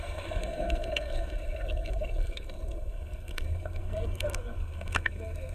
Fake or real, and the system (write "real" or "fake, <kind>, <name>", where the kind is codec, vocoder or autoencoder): fake, codec, SNAC